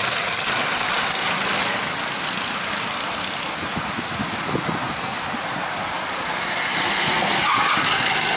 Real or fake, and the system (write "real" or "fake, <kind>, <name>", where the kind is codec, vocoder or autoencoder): real